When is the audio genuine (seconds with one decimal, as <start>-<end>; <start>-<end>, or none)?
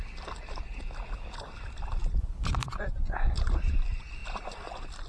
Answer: 0.0-5.1